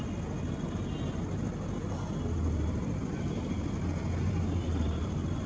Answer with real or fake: real